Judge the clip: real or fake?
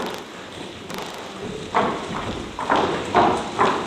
real